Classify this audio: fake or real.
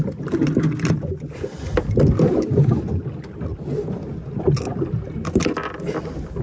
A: real